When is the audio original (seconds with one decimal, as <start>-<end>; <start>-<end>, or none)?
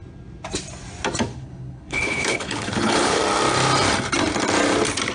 0.0-1.3; 3.2-5.1